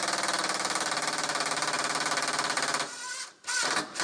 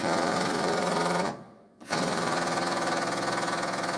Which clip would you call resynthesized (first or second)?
second